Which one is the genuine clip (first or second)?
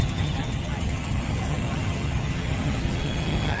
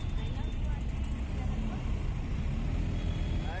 second